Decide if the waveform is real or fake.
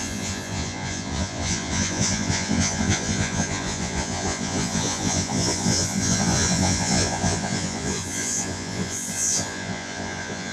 fake